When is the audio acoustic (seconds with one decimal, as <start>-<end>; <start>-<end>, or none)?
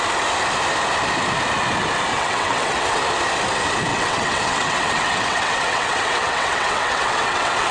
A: 0.0-2.1; 3.0-3.9